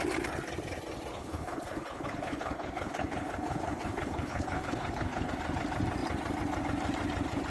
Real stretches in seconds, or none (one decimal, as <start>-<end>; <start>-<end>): 0.0-1.1; 5.3-7.5